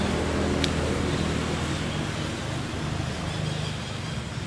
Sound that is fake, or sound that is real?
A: real